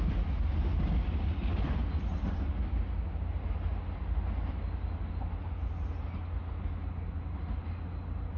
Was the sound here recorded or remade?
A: recorded